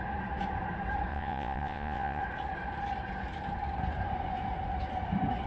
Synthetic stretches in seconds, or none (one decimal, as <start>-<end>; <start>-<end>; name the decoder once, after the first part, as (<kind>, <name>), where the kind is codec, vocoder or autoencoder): 1.1-2.2 (vocoder, Vocos)